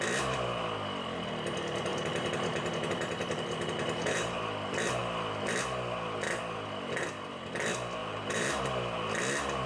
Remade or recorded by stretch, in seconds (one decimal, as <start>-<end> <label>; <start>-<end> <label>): 0.0-1.9 recorded; 1.9-4.4 remade; 4.4-8.0 recorded; 8.0-8.6 remade; 8.6-9.7 recorded